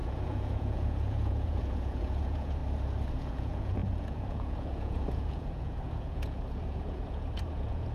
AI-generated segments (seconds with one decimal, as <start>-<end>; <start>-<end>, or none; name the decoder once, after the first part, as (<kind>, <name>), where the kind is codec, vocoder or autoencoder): 0.0-2.6 (vocoder, Vocos); 3.1-7.9